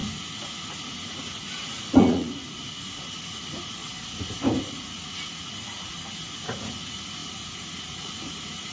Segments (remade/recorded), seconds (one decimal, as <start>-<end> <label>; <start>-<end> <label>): 0.0-3.8 remade; 3.8-4.6 recorded; 4.6-8.7 remade

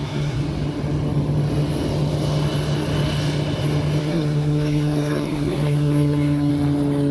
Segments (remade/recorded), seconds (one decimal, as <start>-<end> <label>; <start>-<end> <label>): 0.0-0.4 remade; 0.4-4.0 recorded; 4.0-6.5 remade; 6.5-7.1 recorded

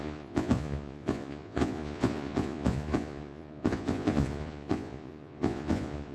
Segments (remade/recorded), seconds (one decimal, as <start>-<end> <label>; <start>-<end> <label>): 0.0-6.1 remade

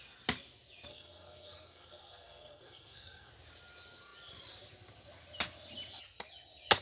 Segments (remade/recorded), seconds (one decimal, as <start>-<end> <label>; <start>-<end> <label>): 0.0-0.9 recorded; 0.9-3.3 remade; 3.3-6.8 recorded

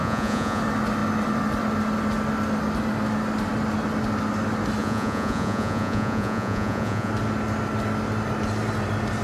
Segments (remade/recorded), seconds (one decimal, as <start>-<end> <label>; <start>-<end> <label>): 0.0-0.6 remade; 0.6-4.8 recorded; 4.8-7.1 remade; 7.1-9.2 recorded

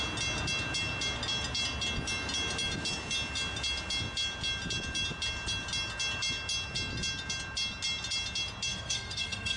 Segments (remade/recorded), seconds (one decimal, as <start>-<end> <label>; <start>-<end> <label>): 0.0-8.7 recorded; 8.7-9.6 remade

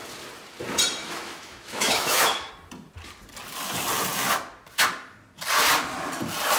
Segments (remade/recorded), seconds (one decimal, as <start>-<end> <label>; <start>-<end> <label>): 0.0-1.0 recorded; 1.0-2.5 remade; 2.5-6.6 recorded